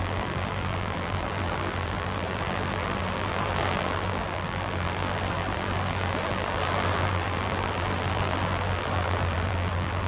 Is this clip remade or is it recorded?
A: remade